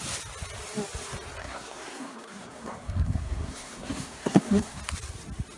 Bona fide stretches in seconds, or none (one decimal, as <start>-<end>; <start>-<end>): 0.0-1.4; 4.8-5.6